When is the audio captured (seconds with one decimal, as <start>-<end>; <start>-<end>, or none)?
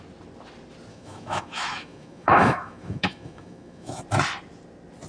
0.0-0.9; 4.0-5.1